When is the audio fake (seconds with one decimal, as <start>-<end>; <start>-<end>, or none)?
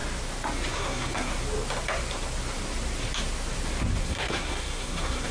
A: 0.7-1.3; 4.0-5.3